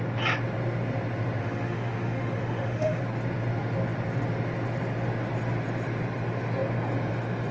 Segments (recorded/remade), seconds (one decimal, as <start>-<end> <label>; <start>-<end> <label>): 0.0-1.4 recorded; 1.4-3.0 remade; 3.0-7.5 recorded